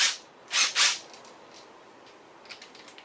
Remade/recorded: recorded